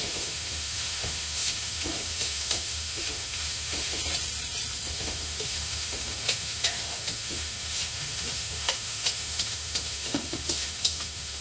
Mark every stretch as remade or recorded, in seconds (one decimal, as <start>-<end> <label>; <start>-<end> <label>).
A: 0.0-4.0 remade; 4.0-4.9 recorded; 4.9-11.4 remade